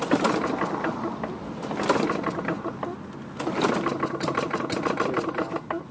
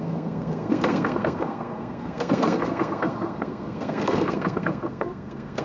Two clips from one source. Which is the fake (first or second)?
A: second